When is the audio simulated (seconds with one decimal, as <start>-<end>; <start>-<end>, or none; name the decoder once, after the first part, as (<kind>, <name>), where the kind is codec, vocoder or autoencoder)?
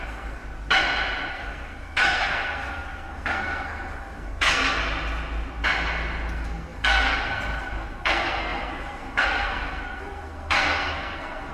0.0-0.4 (codec, SNAC); 1.3-4.8; 6.3-11.5